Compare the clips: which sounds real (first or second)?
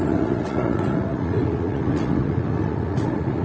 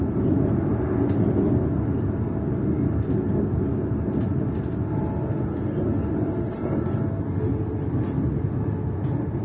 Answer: second